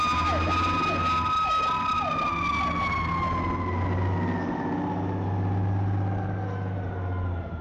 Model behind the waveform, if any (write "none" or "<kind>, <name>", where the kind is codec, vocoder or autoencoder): none